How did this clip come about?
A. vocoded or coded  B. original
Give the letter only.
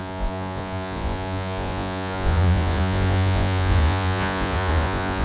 A